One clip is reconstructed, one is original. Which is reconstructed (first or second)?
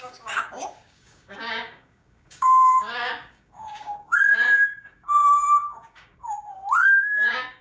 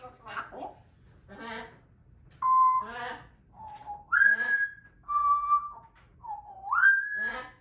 first